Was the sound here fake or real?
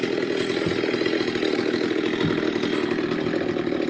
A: real